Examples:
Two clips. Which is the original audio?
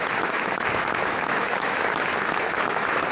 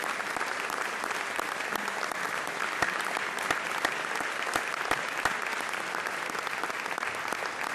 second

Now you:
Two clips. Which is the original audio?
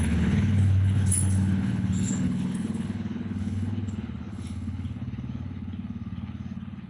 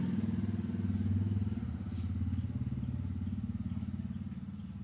second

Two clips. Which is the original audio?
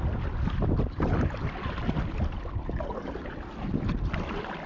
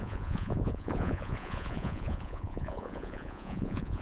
first